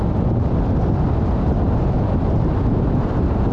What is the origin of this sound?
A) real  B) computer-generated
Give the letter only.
A